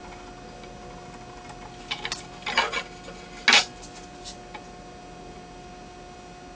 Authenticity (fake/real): real